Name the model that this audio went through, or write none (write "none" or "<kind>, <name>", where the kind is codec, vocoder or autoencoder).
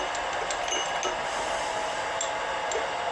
none